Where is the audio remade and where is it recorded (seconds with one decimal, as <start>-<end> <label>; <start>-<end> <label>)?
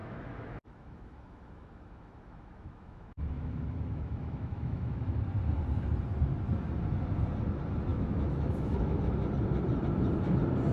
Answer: 0.0-5.2 remade; 5.2-7.9 recorded; 7.9-9.0 remade; 9.0-10.7 recorded